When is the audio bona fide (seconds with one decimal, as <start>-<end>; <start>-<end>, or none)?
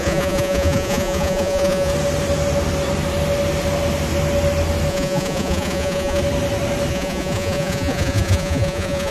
1.9-4.9; 6.2-6.9